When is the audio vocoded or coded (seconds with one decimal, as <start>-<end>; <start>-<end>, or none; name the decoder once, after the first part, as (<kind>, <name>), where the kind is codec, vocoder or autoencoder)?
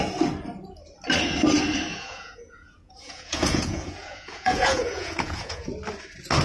1.9-5.7 (vocoder, Vocos)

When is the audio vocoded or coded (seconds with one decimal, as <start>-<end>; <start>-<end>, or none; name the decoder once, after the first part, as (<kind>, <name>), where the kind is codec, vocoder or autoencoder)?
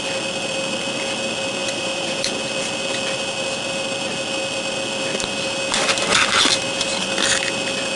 1.6-2.3 (vocoder, Vocos)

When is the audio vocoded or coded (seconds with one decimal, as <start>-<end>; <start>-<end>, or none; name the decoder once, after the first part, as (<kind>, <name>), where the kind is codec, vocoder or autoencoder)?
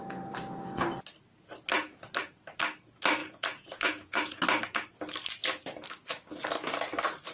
3.2-4.4 (vocoder, Vocos)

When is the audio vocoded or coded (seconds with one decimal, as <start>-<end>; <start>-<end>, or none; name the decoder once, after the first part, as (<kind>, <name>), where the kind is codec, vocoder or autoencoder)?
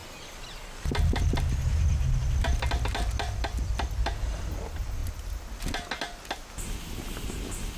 none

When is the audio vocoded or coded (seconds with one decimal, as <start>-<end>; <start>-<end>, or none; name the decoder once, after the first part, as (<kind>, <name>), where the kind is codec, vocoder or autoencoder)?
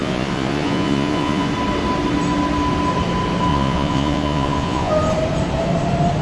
0.0-1.5 (vocoder, Vocos); 3.5-4.9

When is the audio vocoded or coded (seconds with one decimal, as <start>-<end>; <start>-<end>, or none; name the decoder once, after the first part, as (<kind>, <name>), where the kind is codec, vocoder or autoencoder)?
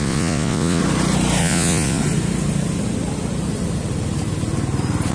0.0-0.8 (vocoder, Vocos); 1.4-2.0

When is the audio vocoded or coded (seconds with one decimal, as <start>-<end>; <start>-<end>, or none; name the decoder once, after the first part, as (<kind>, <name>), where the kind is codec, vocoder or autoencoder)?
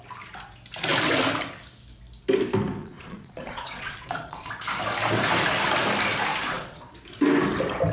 2.8-4.5 (vocoder, Vocos); 6.3-6.9